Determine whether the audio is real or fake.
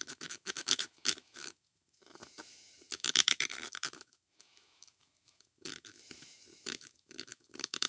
fake